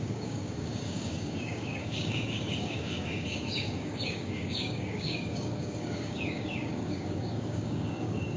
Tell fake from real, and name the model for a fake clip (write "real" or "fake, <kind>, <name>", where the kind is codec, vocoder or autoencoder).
fake, codec, DAC